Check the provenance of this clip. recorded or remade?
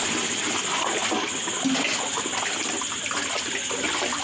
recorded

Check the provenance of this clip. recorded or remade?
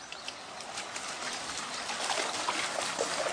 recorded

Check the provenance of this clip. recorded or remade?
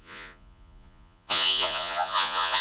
remade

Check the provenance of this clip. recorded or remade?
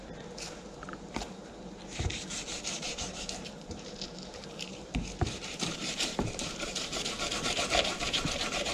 remade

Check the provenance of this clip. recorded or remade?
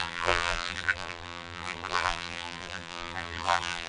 remade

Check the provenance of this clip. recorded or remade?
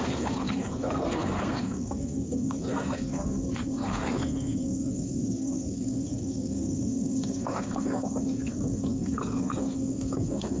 remade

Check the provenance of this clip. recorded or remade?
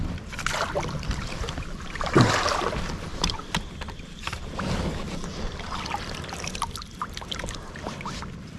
remade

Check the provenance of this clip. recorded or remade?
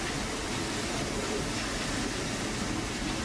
recorded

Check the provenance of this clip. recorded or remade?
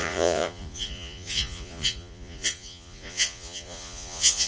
remade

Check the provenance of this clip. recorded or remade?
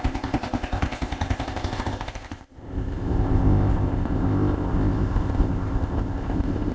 remade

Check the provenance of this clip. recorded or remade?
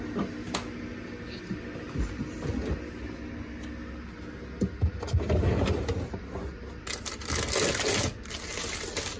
recorded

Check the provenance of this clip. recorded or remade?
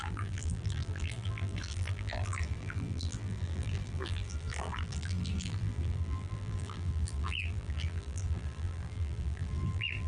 remade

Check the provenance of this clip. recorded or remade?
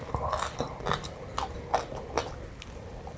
recorded